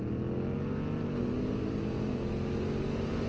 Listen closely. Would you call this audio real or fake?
real